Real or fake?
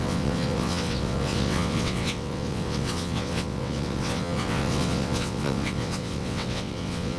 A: fake